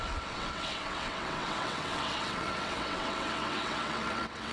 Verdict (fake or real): fake